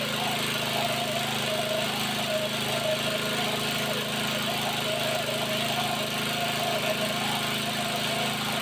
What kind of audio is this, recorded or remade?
recorded